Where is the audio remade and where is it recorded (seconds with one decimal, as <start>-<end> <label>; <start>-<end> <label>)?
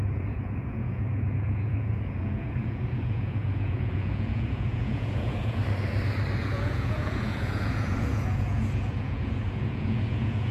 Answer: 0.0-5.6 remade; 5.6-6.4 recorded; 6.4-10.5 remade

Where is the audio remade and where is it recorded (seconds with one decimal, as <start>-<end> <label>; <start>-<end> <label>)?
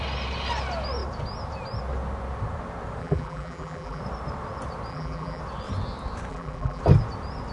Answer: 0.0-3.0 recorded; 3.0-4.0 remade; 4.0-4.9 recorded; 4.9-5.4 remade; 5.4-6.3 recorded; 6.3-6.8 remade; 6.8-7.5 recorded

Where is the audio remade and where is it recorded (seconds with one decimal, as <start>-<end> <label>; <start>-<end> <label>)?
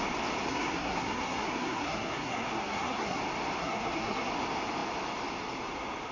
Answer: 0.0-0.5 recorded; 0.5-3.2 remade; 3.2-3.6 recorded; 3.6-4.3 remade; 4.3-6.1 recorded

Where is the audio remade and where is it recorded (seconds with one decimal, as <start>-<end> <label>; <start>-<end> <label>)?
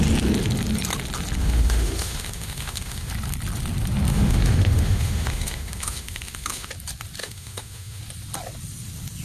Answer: 0.0-1.4 recorded; 1.4-3.1 remade; 3.1-4.1 recorded; 4.1-6.7 remade; 6.7-7.2 recorded; 7.2-8.0 remade; 8.0-9.2 recorded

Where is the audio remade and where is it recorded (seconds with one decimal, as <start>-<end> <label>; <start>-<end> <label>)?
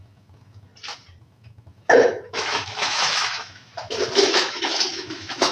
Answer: 0.0-0.7 remade; 0.7-1.2 recorded; 1.2-3.7 remade; 3.7-4.3 recorded; 4.3-5.5 remade